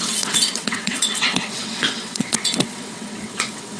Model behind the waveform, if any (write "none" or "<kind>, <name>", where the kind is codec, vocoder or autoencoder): vocoder, WaveNeXt